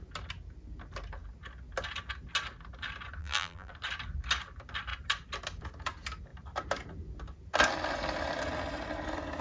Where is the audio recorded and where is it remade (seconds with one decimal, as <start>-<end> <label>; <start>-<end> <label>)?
0.0-3.2 recorded; 3.2-3.7 remade; 3.7-9.4 recorded